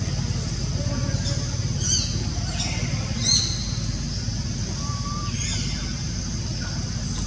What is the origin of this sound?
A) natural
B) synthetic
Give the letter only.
A